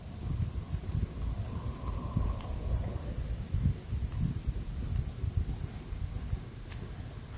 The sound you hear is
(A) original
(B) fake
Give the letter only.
A